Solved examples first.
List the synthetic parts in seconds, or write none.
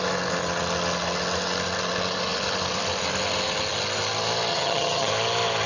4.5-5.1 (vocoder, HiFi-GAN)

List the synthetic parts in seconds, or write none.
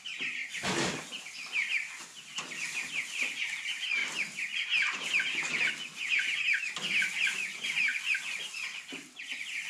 0.0-0.4 (vocoder, BigVGAN v2); 3.4-4.0; 6.6-7.9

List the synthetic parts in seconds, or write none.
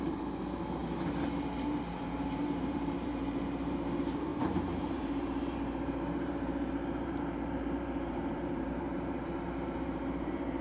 0.0-0.8 (vocoder, BigVGAN v2); 1.9-10.6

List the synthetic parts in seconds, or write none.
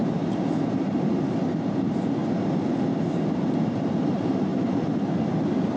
0.0-2.2 (vocoder, BigVGAN v2); 3.1-4.5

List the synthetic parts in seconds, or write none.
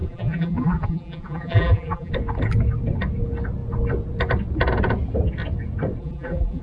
0.0-2.1 (vocoder, BigVGAN v2); 6.0-6.6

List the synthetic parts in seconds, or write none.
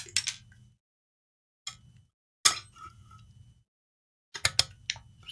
none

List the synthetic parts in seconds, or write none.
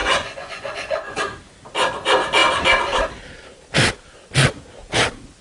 0.0-1.2 (vocoder, Vocos)